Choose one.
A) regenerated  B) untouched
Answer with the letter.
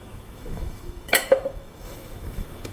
A